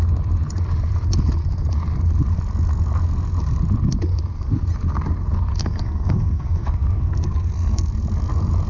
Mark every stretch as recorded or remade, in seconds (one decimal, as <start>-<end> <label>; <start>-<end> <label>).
0.0-5.6 recorded; 5.6-7.9 remade; 7.9-8.7 recorded

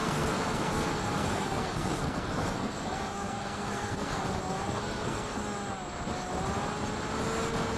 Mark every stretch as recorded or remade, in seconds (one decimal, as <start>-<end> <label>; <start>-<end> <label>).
0.0-5.4 remade; 5.4-7.8 recorded

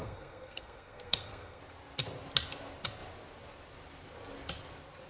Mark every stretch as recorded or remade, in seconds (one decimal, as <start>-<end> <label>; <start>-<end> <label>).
0.0-1.6 remade; 1.6-5.1 recorded

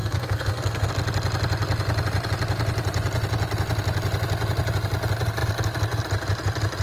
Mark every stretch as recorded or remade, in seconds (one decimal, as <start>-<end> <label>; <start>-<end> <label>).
0.0-0.9 remade; 0.9-6.8 recorded

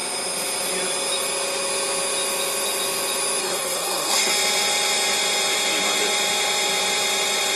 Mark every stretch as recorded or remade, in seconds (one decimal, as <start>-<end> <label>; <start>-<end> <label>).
0.0-3.4 recorded; 3.4-4.3 remade; 4.3-7.6 recorded

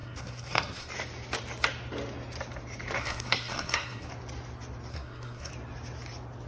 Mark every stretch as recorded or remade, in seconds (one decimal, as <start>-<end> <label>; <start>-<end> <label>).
0.0-0.9 remade; 0.9-3.0 recorded; 3.0-4.1 remade; 4.1-4.9 recorded; 4.9-5.5 remade; 5.5-6.5 recorded

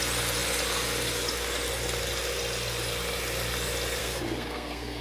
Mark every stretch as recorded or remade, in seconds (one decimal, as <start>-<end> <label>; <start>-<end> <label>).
0.0-4.0 recorded; 4.0-5.0 remade

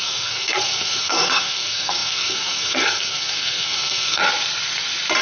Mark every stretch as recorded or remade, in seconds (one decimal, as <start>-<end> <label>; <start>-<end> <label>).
0.0-4.2 remade; 4.2-5.2 recorded